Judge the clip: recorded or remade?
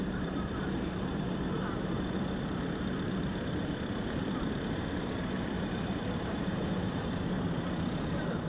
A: remade